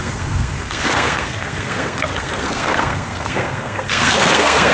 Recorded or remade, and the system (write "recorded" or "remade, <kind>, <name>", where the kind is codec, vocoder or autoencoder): remade, codec, SNAC